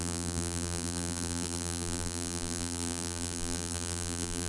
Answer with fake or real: fake